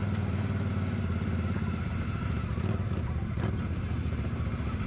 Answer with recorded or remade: remade